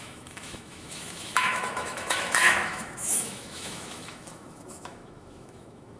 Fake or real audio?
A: fake